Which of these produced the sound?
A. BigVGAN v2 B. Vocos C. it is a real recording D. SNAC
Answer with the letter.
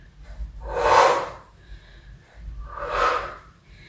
C